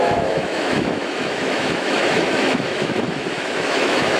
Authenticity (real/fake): fake